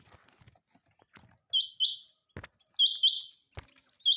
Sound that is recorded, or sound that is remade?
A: recorded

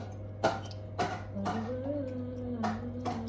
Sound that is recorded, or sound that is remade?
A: recorded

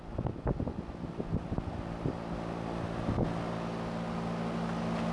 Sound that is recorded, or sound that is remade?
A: recorded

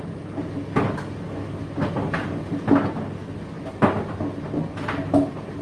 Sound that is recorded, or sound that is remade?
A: recorded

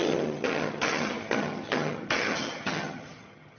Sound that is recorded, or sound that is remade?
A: remade